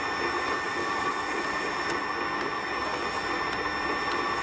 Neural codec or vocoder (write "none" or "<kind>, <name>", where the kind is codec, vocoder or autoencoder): none